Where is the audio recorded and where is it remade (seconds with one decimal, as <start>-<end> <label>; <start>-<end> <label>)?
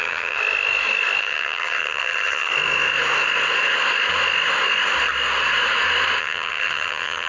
0.0-0.4 remade; 0.4-1.2 recorded; 1.2-2.5 remade; 2.5-6.2 recorded; 6.2-7.3 remade